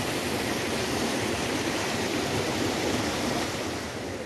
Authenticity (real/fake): fake